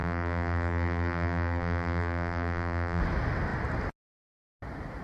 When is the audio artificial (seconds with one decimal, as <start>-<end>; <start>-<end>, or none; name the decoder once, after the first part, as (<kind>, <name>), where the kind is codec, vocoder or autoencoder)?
0.0-3.0 (vocoder, BigVGAN v2)